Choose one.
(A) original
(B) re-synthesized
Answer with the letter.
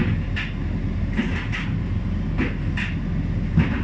A